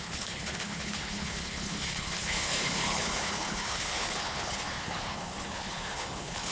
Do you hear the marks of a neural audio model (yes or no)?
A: yes